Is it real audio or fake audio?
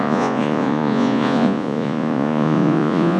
fake